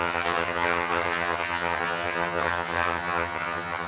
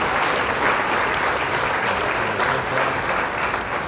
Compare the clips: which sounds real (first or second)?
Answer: second